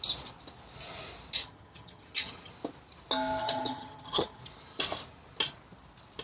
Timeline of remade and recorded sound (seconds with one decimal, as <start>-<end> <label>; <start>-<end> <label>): 0.0-1.4 recorded; 1.4-2.5 remade; 2.5-3.4 recorded; 3.4-4.4 remade; 4.4-6.2 recorded